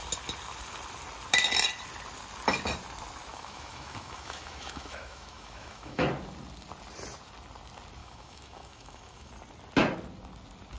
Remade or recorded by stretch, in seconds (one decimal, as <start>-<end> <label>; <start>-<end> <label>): 0.0-3.3 recorded; 3.3-6.0 remade; 6.0-8.0 recorded; 8.0-9.3 remade; 9.3-10.8 recorded